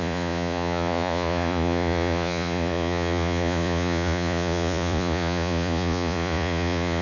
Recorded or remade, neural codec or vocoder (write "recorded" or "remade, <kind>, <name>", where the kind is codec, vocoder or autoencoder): remade, vocoder, Vocos